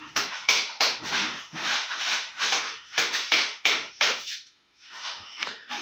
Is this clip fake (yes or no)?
yes